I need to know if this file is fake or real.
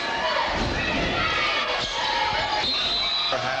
real